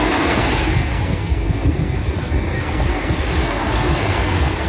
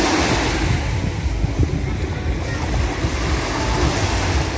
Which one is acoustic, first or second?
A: second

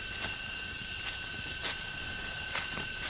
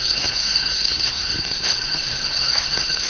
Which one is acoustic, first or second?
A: first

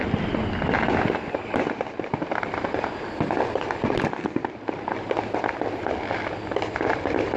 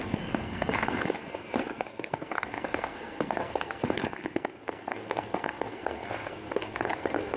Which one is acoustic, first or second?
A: first